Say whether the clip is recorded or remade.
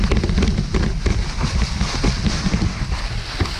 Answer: recorded